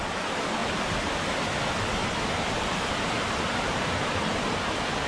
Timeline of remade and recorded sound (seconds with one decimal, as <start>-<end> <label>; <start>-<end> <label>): 0.0-5.1 recorded

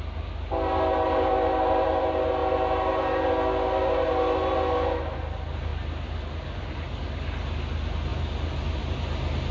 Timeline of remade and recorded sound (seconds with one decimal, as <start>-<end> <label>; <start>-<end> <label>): 0.0-9.5 recorded

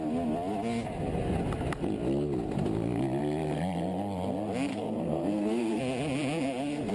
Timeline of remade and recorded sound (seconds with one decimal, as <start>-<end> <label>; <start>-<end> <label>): 0.0-4.7 recorded; 4.7-5.8 remade; 5.8-6.9 recorded